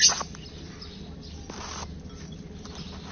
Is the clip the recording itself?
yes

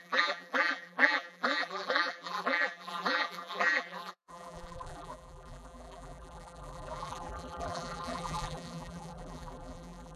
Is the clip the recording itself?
no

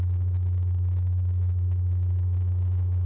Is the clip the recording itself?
no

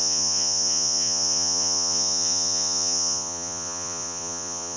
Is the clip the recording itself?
no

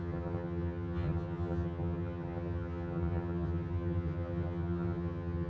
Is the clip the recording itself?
no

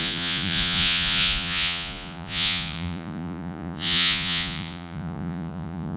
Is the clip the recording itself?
no